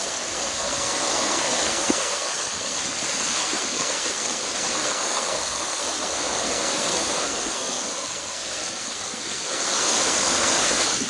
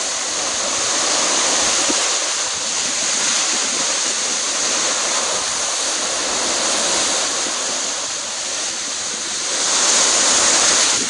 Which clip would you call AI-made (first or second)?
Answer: first